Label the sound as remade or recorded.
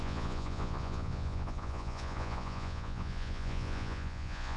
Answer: remade